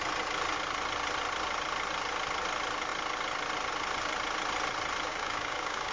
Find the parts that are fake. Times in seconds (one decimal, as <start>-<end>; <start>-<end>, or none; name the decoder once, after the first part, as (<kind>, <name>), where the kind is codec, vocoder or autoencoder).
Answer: 5.1-5.9 (codec, DAC)